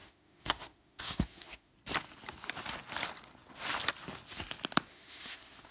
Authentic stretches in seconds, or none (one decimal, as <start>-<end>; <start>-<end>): 1.7-4.9